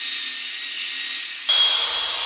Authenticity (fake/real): fake